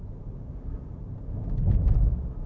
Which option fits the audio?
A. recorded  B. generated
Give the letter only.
A